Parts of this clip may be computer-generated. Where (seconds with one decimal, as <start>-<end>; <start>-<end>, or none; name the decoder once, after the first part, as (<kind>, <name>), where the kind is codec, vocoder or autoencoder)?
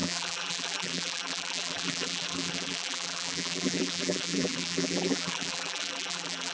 0.0-6.5 (vocoder, BigVGAN v2)